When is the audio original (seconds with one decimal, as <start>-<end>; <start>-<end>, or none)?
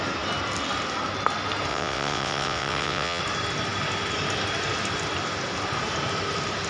0.0-1.7; 3.2-6.7